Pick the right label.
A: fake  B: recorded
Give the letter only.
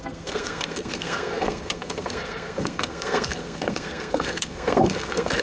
A